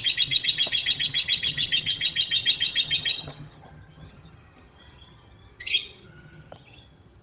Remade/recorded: remade